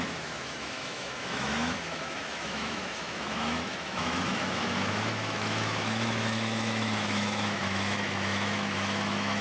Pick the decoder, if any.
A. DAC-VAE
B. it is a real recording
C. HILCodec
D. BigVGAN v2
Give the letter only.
A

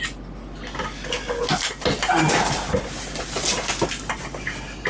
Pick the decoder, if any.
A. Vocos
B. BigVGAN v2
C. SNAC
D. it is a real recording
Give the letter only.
D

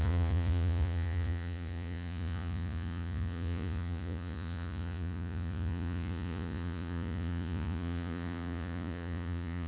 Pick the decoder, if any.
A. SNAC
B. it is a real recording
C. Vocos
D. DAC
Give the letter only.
C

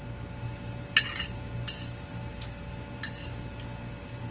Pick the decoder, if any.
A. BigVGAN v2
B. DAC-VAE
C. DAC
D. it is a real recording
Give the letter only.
D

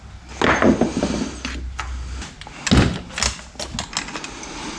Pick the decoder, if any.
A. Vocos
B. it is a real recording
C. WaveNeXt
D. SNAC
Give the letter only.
B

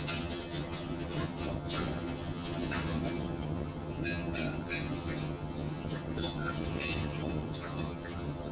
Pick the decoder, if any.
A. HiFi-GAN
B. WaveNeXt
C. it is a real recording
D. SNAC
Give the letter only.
A